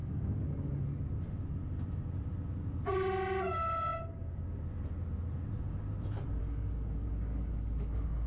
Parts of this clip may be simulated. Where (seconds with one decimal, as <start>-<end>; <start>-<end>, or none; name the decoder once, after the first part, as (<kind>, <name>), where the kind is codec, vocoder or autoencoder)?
0.0-1.0 (codec, DAC); 6.4-8.3